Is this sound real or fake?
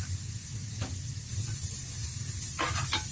real